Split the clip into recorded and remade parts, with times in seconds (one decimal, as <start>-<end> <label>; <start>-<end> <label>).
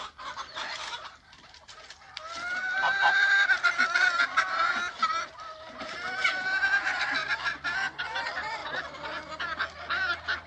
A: 0.0-7.2 remade; 7.2-8.0 recorded; 8.0-8.6 remade; 8.6-10.5 recorded